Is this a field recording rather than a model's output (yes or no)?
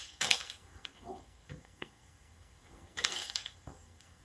no